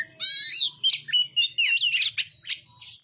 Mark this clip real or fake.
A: real